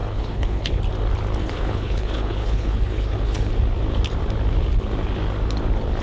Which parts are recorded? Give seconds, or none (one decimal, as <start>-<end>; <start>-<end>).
0.8-1.4; 3.5-6.0